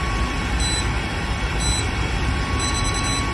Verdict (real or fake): real